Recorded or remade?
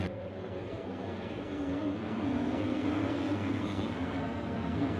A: remade